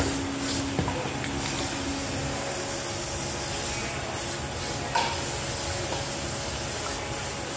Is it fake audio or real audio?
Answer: real